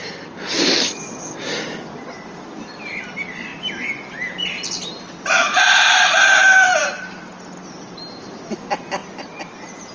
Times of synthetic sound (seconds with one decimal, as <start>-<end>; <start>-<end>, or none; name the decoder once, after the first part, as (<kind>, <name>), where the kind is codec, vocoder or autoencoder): none